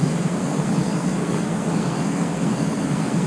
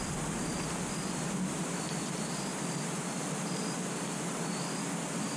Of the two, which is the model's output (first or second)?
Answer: first